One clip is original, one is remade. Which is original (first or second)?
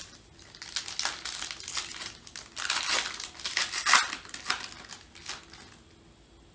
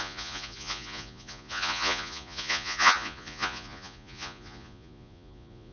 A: first